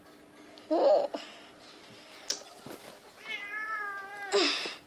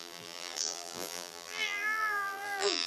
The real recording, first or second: first